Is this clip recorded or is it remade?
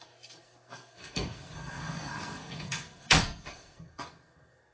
remade